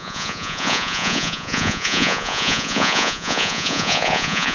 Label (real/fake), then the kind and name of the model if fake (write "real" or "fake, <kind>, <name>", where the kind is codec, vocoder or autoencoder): fake, vocoder, Vocos